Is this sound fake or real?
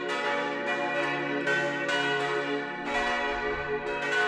real